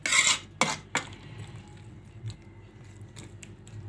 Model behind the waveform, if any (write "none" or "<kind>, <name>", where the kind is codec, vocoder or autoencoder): none